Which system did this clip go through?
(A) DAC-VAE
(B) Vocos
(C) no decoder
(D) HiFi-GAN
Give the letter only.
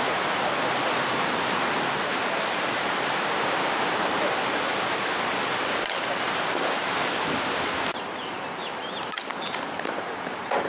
C